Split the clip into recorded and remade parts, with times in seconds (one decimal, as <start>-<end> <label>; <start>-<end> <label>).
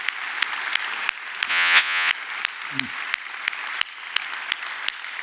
0.0-1.5 recorded; 1.5-2.1 remade; 2.1-5.2 recorded